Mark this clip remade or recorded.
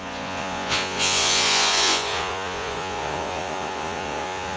remade